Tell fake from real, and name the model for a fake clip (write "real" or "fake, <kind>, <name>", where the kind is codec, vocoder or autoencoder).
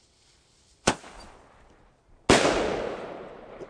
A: real